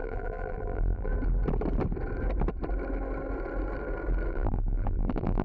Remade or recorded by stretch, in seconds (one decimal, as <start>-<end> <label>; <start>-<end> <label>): 0.0-1.1 remade; 1.1-4.3 recorded; 4.3-5.4 remade